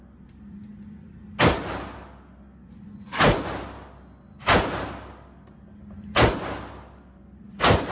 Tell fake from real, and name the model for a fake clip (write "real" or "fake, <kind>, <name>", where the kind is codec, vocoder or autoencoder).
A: real